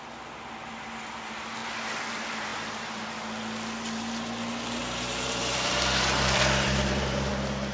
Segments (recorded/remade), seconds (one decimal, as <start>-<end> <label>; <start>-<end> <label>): 0.0-2.5 recorded; 2.5-3.0 remade; 3.0-4.8 recorded; 4.8-7.3 remade; 7.3-7.7 recorded